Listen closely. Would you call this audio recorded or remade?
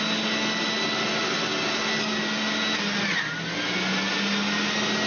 recorded